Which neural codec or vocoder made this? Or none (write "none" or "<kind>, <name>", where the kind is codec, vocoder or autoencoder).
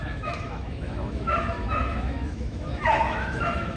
autoencoder, DAC-VAE